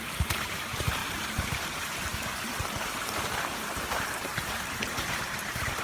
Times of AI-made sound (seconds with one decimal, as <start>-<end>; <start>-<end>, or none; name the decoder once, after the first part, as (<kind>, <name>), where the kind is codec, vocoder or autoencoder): 0.0-5.8 (vocoder, BigVGAN v2)